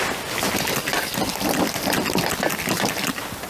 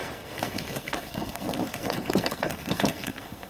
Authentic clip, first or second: first